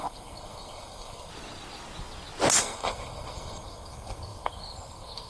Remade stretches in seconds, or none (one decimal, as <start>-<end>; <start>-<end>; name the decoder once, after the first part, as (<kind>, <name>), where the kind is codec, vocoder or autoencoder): 0.0-1.3 (codec, SNAC); 2.6-5.3